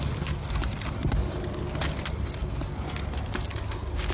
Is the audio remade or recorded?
recorded